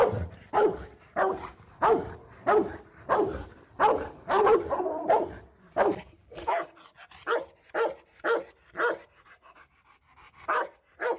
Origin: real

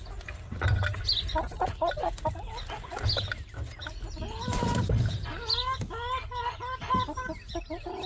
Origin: real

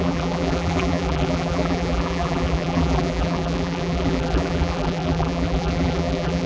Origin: fake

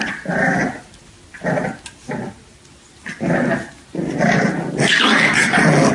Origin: real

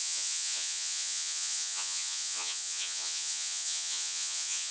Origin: fake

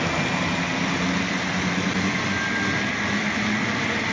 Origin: real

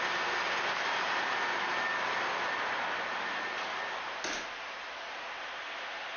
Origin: real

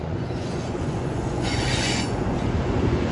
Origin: fake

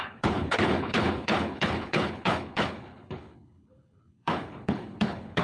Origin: fake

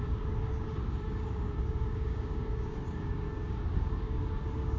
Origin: fake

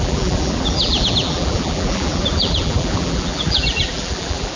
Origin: fake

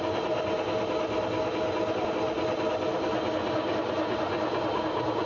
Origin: real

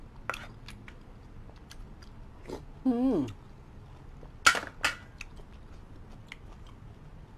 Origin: real